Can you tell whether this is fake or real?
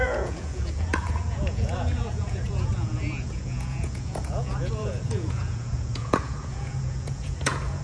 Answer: fake